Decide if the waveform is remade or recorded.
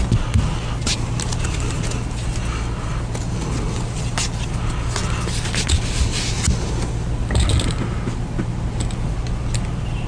recorded